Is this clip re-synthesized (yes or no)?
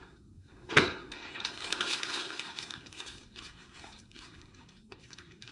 yes